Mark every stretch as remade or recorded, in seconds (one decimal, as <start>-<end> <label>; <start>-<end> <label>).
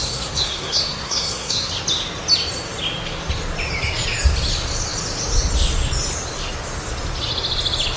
0.0-1.7 remade; 1.7-8.0 recorded